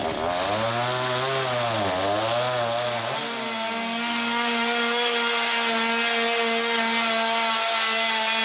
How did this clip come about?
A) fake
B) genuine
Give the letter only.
B